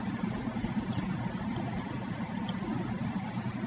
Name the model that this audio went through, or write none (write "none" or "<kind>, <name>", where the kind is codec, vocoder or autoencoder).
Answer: none